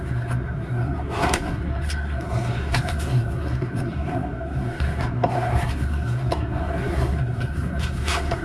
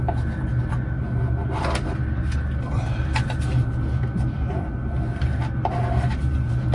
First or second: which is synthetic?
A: first